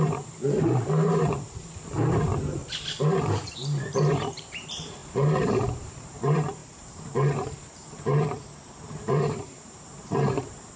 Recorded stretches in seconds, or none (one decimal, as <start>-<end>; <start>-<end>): 2.6-3.2